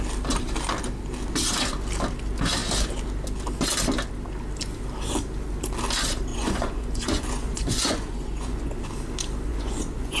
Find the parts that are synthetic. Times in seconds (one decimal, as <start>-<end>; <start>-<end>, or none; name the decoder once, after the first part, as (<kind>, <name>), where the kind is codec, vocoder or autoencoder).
6.3-8.8 (vocoder, Vocos); 9.5-10.2